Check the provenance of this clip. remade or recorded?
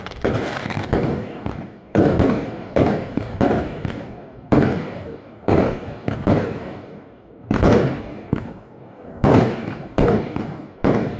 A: remade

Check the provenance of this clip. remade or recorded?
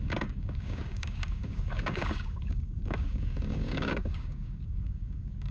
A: remade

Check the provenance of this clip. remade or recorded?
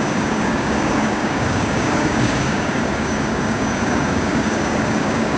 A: remade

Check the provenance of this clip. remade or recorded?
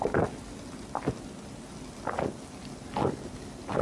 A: recorded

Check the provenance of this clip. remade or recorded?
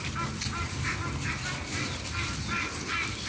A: recorded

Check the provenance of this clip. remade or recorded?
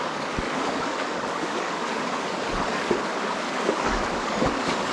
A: remade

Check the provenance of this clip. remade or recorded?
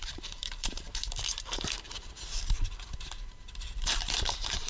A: remade